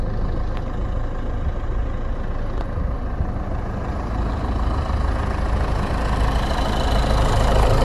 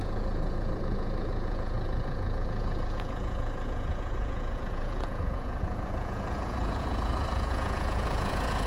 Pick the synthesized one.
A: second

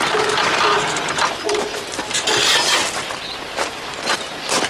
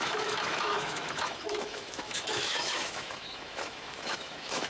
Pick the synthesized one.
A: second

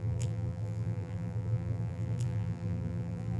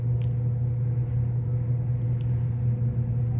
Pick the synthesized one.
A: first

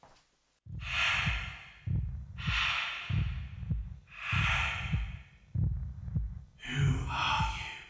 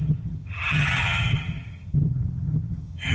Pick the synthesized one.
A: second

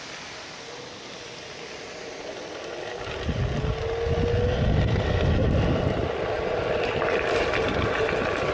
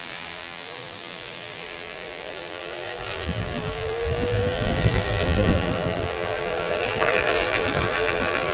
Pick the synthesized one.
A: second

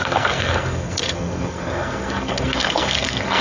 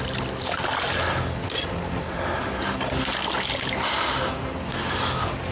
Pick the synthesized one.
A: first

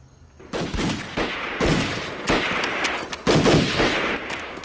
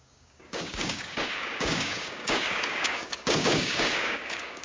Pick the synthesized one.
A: second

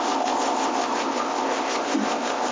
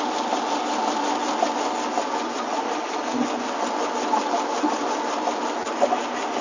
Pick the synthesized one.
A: first